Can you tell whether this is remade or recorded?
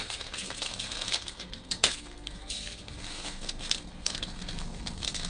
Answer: remade